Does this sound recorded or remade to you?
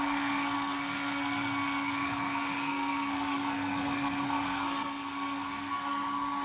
remade